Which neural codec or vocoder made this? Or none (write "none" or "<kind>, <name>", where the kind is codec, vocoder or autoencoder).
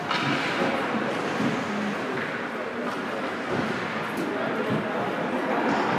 none